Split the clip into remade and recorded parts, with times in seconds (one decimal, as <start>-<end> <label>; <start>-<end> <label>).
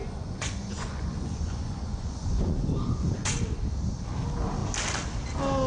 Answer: 0.0-3.4 remade; 3.4-5.7 recorded